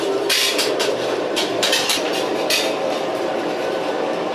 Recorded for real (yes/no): no